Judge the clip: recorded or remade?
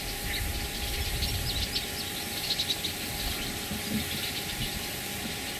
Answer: recorded